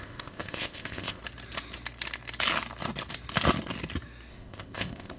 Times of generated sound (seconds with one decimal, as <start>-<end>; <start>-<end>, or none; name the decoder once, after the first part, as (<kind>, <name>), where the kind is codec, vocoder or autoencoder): 0.0-1.2 (codec, ZipCodec); 4.3-5.2